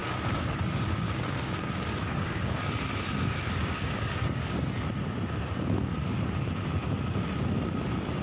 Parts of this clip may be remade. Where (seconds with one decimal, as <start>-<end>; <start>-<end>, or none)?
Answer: 0.0-2.6; 3.6-4.6